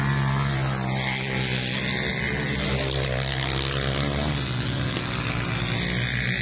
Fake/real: real